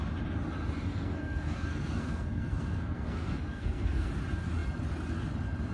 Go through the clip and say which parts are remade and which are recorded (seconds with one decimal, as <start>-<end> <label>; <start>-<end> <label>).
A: 0.0-0.9 recorded; 0.9-4.1 remade; 4.1-5.7 recorded